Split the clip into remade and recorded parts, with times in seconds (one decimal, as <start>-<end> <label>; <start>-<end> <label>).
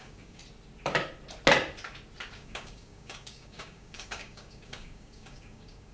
0.0-0.4 remade; 0.4-2.3 recorded; 2.3-5.9 remade